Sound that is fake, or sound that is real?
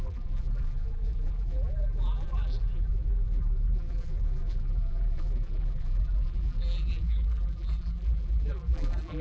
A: fake